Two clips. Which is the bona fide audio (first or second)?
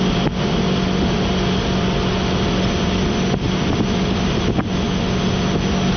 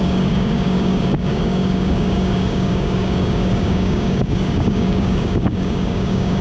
first